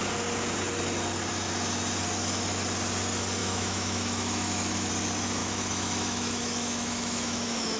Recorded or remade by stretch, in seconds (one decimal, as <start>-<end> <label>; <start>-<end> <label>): 0.0-3.4 recorded; 3.4-4.9 remade; 4.9-5.4 recorded; 5.4-7.8 remade